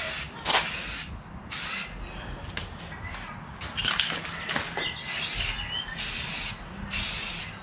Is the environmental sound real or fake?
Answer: real